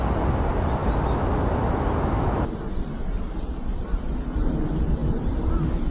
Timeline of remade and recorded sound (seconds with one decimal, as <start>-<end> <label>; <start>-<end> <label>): 0.0-5.9 recorded